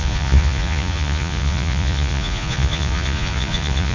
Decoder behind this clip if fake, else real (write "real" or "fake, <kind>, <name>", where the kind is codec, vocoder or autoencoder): fake, vocoder, Vocos